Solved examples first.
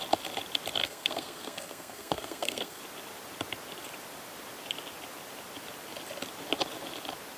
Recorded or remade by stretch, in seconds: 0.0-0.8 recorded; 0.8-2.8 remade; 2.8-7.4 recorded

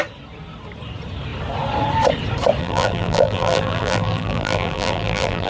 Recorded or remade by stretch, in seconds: 0.0-2.6 recorded; 2.6-5.5 remade

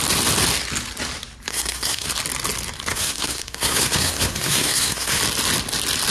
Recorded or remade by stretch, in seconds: 0.0-1.5 recorded; 1.5-2.1 remade; 2.1-2.9 recorded; 2.9-5.2 remade; 5.2-6.1 recorded